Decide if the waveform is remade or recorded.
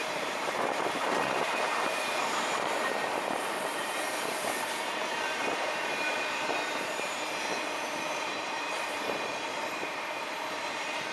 remade